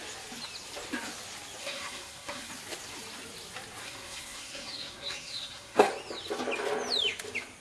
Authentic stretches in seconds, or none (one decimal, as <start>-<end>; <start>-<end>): 0.0-1.6; 2.5-3.8; 5.9-7.6